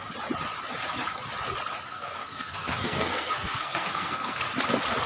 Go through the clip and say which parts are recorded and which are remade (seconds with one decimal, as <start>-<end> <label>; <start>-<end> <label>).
0.0-1.9 recorded; 1.9-4.5 remade; 4.5-5.1 recorded